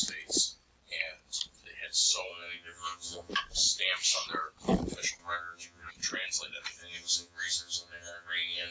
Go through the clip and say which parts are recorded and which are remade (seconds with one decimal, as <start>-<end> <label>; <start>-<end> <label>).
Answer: 0.0-2.3 recorded; 2.3-3.3 remade; 3.3-5.2 recorded; 5.2-5.9 remade; 5.9-6.8 recorded; 6.8-8.7 remade